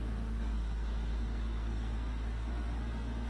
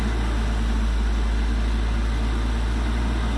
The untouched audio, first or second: second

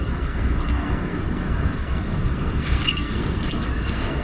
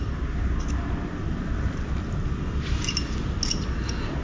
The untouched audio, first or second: second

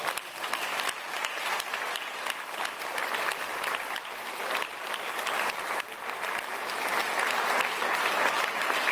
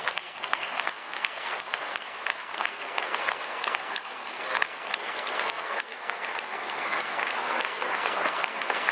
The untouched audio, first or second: first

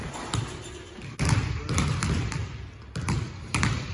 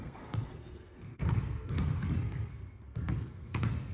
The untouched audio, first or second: first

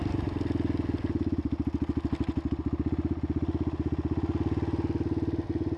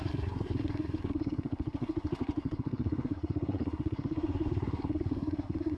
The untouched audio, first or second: first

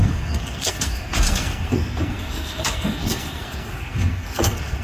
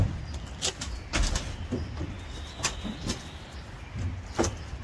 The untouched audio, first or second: second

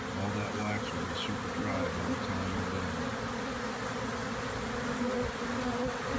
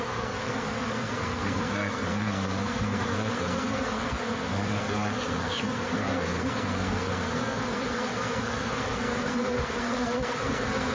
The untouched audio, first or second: first